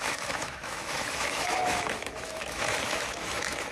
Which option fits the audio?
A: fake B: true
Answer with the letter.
A